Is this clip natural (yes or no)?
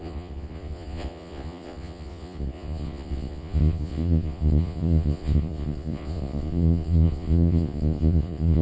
no